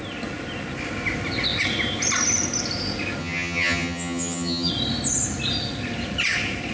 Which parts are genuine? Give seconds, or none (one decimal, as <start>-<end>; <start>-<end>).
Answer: 0.0-3.2; 4.7-6.7